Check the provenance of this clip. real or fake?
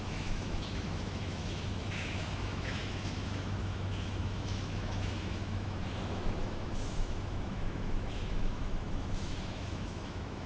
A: fake